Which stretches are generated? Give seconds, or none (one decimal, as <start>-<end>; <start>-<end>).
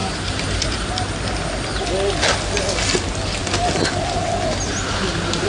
0.0-0.9